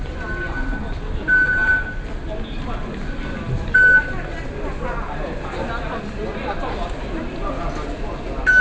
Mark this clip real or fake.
real